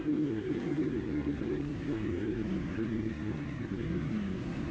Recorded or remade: remade